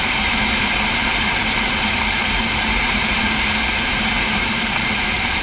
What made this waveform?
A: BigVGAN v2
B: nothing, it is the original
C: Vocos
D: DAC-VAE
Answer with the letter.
A